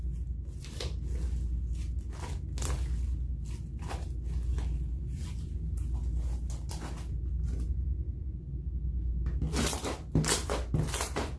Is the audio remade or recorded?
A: recorded